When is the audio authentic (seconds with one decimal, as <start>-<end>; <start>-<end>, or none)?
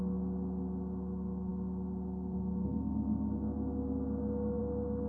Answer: 0.0-5.1